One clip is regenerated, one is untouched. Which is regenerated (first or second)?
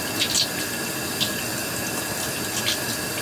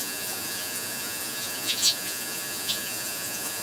second